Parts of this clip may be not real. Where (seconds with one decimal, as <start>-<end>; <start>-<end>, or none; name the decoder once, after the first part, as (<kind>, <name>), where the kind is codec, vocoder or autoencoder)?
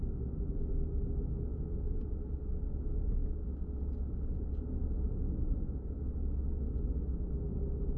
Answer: 1.5-2.3 (vocoder, Vocos)